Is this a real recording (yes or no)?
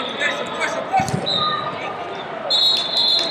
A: yes